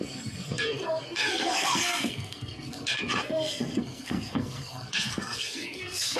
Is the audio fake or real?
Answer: fake